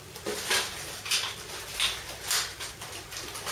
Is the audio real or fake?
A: real